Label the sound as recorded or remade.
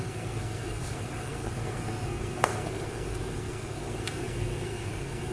remade